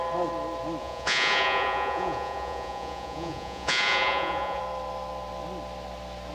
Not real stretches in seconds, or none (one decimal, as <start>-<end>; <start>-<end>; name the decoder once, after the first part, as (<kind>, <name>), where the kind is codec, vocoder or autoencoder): 0.8-4.6 (vocoder, Vocos)